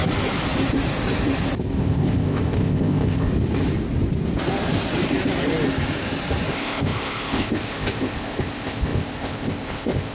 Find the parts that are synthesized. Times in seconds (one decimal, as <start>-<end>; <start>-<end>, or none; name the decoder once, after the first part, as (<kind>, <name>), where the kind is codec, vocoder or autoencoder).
1.8-3.3 (codec, ZipCodec); 6.5-10.1